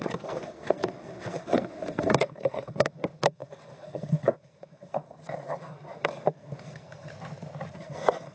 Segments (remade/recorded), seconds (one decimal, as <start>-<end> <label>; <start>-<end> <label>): 0.0-7.1 remade; 7.1-7.7 recorded; 7.7-8.3 remade